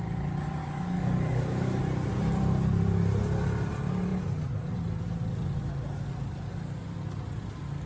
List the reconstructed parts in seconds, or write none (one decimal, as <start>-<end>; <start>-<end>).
0.6-1.8